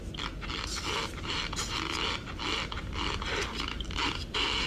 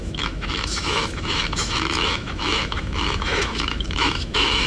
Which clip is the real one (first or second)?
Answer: first